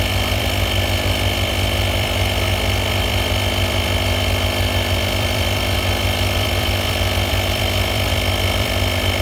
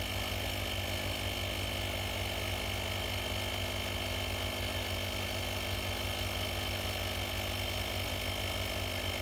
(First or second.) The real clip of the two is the second